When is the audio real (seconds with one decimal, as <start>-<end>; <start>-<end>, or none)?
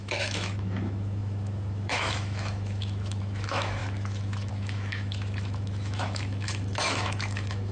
none